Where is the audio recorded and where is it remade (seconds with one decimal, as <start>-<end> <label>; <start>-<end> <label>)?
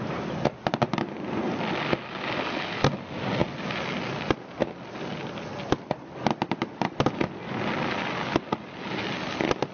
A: 0.0-9.7 recorded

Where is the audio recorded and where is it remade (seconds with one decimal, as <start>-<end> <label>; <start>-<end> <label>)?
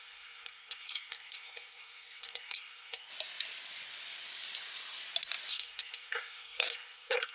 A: 0.0-3.1 remade; 3.1-5.5 recorded; 5.5-7.3 remade